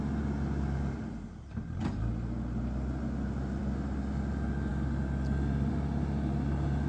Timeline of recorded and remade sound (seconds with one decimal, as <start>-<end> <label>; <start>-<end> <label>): 0.0-6.9 recorded